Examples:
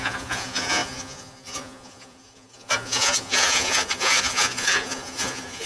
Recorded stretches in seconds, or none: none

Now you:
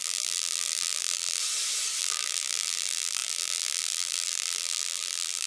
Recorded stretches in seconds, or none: 1.4-2.0

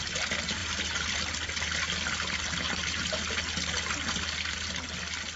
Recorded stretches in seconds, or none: 0.0-0.6; 1.2-5.4

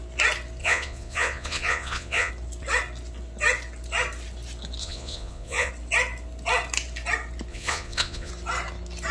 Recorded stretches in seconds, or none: 0.0-0.6; 2.3-4.8; 5.7-7.5; 8.3-9.1

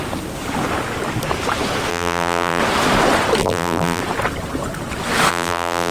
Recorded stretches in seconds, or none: 0.0-1.9; 2.6-3.4; 4.0-5.3

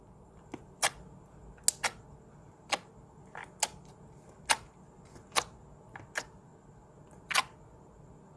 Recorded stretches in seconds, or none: 0.0-8.4

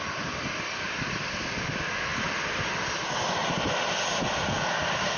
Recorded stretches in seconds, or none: 0.0-2.1; 2.7-5.2

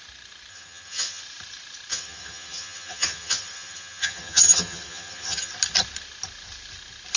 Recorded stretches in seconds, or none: 0.0-0.5; 1.2-1.9; 5.5-7.2